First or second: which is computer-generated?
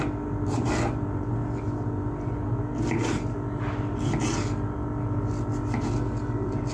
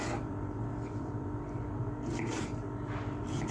second